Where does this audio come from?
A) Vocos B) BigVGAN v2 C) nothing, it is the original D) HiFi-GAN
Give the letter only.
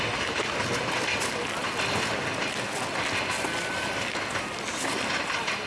C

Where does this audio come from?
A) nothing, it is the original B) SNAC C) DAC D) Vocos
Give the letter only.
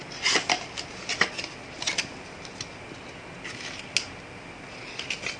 A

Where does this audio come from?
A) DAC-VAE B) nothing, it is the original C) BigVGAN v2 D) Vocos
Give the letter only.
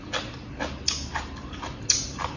B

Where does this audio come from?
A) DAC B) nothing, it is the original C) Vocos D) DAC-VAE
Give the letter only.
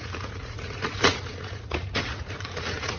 C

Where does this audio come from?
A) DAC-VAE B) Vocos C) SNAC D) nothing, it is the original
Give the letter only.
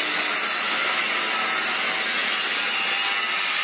D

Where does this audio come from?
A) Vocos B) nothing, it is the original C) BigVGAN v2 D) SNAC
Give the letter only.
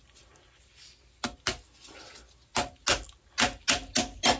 B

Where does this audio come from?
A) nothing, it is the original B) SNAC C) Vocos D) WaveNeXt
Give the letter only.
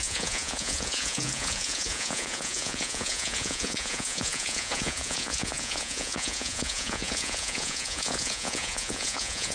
C